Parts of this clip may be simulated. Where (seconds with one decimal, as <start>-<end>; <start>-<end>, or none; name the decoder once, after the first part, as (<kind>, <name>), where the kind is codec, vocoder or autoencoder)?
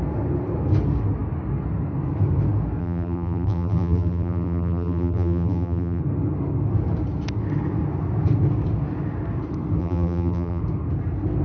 2.8-6.0 (vocoder, BigVGAN v2); 9.8-10.6